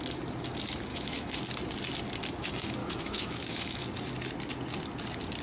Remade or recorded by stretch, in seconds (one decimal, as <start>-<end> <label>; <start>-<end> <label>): 0.0-0.9 recorded; 0.9-1.4 remade; 1.4-2.8 recorded; 2.8-3.8 remade; 3.8-5.4 recorded